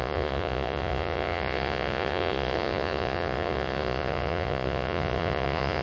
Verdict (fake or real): fake